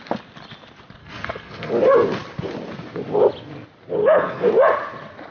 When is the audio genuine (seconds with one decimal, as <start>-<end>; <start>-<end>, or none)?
0.0-1.0; 1.7-4.0; 4.5-5.3